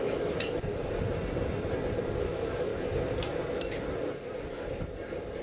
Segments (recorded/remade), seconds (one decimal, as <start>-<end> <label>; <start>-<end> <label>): 0.0-0.7 remade; 0.7-2.2 recorded; 2.2-2.7 remade; 2.7-5.4 recorded